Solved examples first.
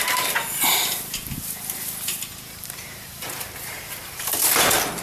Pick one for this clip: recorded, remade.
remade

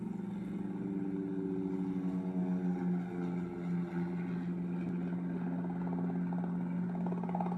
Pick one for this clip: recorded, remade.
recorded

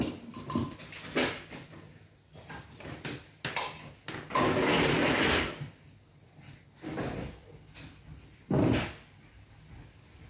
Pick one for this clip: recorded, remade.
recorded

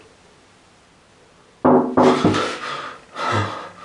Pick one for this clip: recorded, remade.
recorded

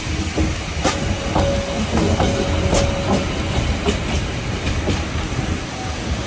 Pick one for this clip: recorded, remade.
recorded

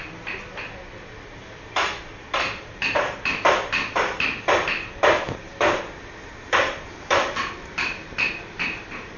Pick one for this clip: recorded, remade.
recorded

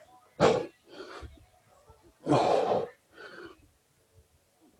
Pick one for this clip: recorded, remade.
recorded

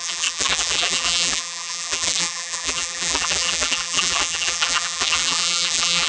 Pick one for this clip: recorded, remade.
remade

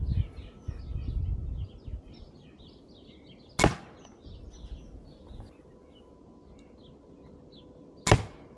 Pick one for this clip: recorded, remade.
recorded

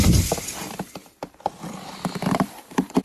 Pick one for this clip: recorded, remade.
remade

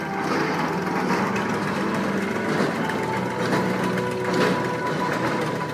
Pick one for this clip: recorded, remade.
recorded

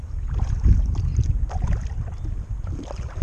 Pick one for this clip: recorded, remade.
recorded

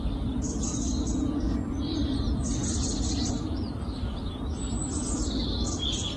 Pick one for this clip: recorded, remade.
recorded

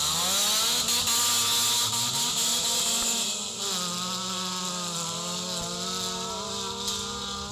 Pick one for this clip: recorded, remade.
recorded